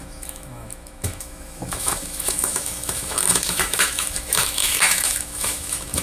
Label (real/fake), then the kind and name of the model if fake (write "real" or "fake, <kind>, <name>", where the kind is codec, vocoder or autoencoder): fake, autoencoder, DAC-VAE